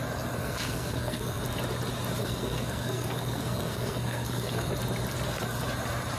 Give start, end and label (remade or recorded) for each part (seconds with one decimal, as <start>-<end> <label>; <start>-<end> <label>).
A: 0.0-0.4 recorded; 0.4-1.4 remade; 1.4-2.2 recorded; 2.2-4.7 remade; 4.7-6.2 recorded